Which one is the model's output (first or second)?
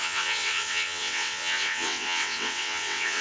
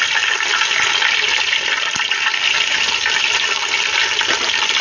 first